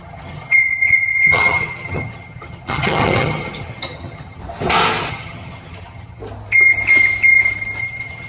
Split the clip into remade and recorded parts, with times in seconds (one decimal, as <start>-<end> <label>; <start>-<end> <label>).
0.0-4.4 remade; 4.4-5.1 recorded; 5.1-6.2 remade; 6.2-7.8 recorded; 7.8-8.3 remade